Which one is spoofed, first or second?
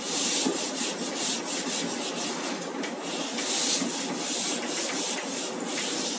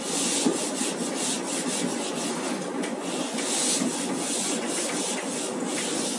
second